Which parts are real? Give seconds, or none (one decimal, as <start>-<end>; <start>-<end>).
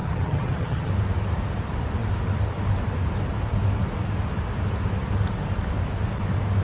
0.9-6.6